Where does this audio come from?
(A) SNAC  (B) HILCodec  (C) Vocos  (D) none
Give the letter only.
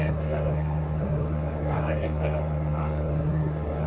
A